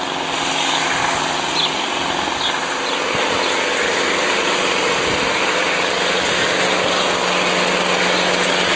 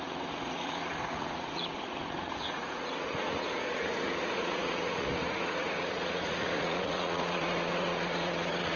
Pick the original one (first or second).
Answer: first